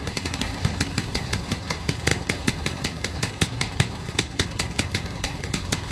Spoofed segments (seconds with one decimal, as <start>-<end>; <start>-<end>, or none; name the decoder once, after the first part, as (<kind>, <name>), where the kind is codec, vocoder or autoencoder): 0.0-5.9 (codec, SNAC)